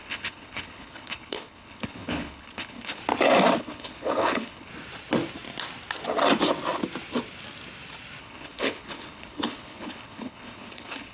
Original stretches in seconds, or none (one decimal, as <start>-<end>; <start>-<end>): 3.0-3.6; 4.7-8.2